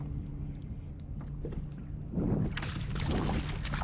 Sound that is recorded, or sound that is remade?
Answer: recorded